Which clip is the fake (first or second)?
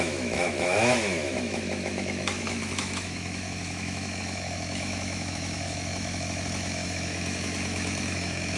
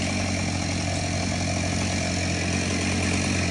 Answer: first